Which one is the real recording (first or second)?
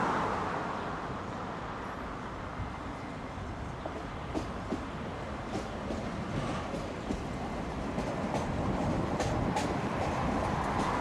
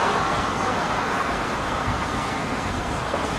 first